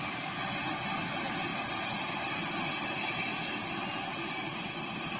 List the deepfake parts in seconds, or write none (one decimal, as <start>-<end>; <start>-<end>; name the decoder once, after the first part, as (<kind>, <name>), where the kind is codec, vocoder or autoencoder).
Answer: none